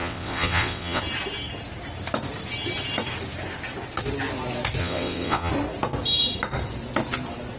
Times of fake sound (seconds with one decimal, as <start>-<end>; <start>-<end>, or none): 0.0-1.0; 4.8-5.5